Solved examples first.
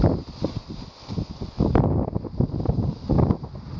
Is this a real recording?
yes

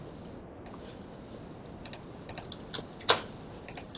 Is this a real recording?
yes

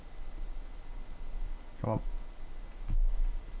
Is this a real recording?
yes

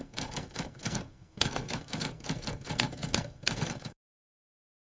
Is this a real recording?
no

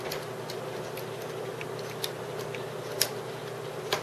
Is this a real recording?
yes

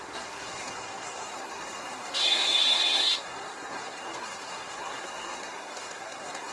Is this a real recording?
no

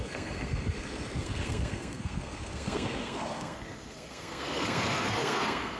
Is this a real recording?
no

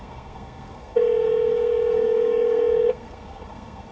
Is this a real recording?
no